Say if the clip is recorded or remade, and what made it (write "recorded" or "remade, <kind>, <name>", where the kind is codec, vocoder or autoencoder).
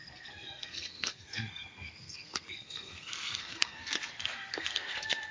remade, codec, SNAC